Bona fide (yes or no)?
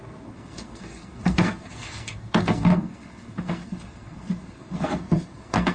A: no